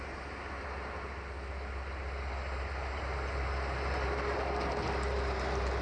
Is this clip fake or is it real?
real